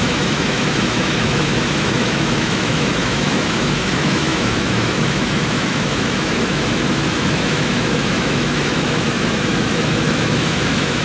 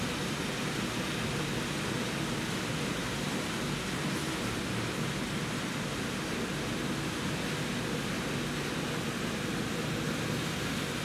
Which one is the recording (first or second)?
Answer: second